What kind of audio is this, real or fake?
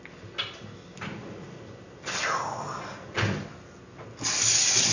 real